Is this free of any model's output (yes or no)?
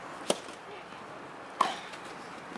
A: yes